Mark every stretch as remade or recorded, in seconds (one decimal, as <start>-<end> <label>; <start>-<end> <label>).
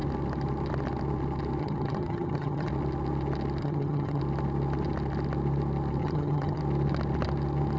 0.0-1.6 recorded; 1.6-2.7 remade; 2.7-3.6 recorded; 3.6-4.2 remade; 4.2-6.0 recorded; 6.0-6.6 remade; 6.6-7.8 recorded